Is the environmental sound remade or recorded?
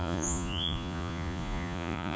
remade